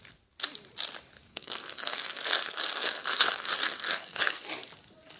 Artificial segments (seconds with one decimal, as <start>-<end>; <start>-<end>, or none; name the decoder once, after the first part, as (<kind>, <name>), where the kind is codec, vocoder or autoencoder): 1.3-4.4 (codec, SNAC)